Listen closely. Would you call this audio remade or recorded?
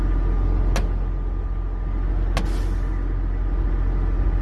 recorded